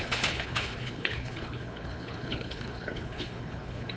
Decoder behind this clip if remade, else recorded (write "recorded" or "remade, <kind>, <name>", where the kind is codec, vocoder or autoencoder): remade, codec, HILCodec